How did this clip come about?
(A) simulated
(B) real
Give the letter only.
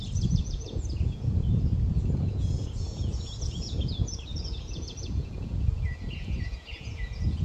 A